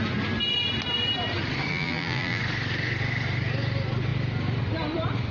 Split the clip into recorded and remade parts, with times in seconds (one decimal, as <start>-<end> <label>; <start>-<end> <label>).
0.0-1.7 recorded; 1.7-2.4 remade; 2.4-5.3 recorded